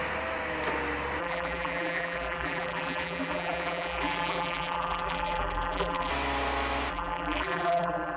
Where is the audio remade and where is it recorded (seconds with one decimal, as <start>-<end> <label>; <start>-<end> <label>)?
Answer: 0.0-1.2 recorded; 1.2-6.1 remade; 6.1-6.9 recorded; 6.9-8.2 remade